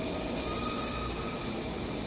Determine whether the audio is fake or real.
real